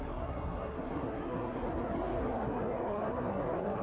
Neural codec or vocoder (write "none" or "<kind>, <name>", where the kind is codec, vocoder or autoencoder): codec, SNAC